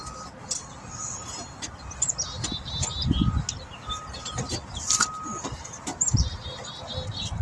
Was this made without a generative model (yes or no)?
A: yes